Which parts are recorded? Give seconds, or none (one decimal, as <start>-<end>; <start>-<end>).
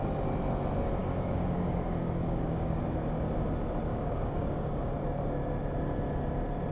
0.0-1.0; 2.8-3.9; 4.9-6.7